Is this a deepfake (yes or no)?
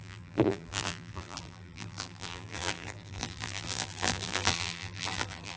yes